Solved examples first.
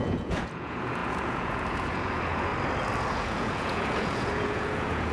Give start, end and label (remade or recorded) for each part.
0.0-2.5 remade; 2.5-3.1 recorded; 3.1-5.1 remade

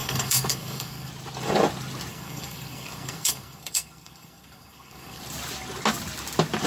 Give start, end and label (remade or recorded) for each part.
0.0-1.1 remade; 1.1-2.1 recorded; 2.1-5.2 remade; 5.2-6.7 recorded

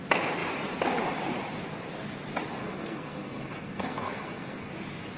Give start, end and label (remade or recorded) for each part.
0.0-2.6 recorded; 2.6-4.7 remade; 4.7-5.2 recorded

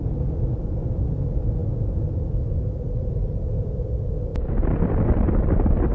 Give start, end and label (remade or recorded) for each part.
0.0-5.9 recorded

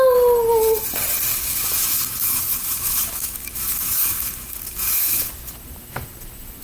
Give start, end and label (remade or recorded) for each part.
0.0-1.3 recorded; 1.3-5.3 remade; 5.3-6.6 recorded

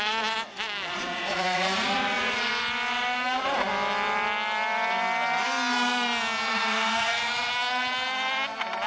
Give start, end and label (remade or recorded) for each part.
0.0-0.9 recorded; 0.9-2.5 remade; 2.5-6.5 recorded; 6.5-7.5 remade; 7.5-8.9 recorded

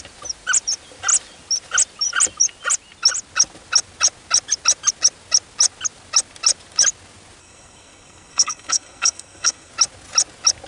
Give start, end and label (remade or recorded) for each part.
0.0-7.4 recorded; 7.4-9.7 remade; 9.7-10.7 recorded

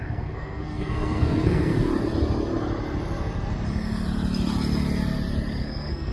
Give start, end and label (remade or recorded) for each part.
0.0-1.9 remade; 1.9-5.6 recorded; 5.6-6.1 remade